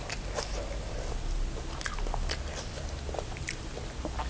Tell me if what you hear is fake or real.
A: real